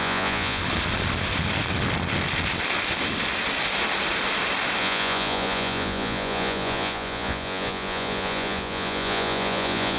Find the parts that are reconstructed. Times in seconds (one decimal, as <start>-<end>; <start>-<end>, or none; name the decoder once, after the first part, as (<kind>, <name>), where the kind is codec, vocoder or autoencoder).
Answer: 0.0-0.6 (vocoder, Vocos); 4.8-10.0